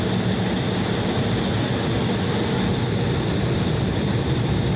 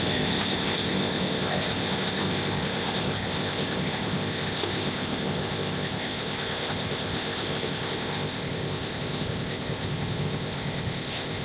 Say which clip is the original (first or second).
first